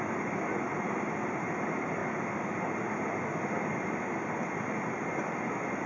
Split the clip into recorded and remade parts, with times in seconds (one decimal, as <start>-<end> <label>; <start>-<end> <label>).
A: 0.0-5.9 recorded